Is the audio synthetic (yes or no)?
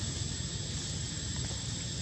no